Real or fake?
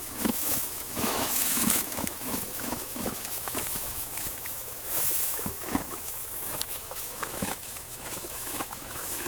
fake